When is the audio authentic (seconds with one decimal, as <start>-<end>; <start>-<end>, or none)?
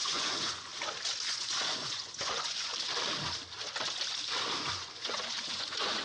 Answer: 0.7-1.3; 2.7-4.6